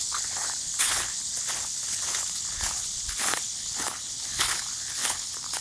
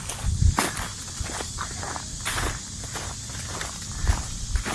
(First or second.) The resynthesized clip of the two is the first